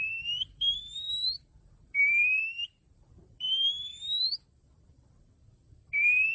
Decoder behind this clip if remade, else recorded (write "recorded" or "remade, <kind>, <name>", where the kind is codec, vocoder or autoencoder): remade, vocoder, BigVGAN v2